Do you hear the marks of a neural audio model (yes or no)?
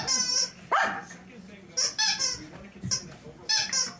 no